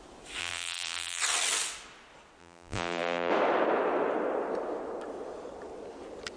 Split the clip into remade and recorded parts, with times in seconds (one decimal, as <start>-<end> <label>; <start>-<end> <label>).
0.0-0.4 recorded; 0.4-1.2 remade; 1.2-2.4 recorded; 2.4-3.3 remade; 3.3-6.4 recorded